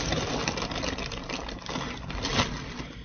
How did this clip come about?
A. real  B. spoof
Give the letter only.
A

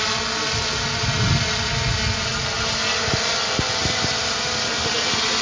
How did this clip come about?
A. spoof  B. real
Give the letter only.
B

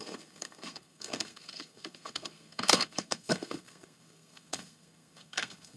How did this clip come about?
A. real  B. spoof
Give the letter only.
B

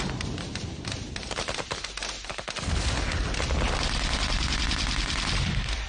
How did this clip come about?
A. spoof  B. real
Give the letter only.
B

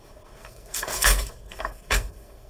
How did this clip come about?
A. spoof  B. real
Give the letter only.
A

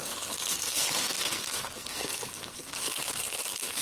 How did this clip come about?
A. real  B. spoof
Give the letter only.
B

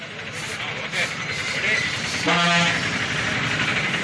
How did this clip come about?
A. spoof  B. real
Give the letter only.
B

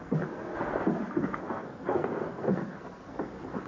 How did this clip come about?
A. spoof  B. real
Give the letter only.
A